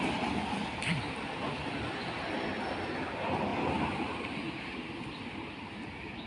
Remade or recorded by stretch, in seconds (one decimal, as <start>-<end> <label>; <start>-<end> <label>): 0.0-6.3 recorded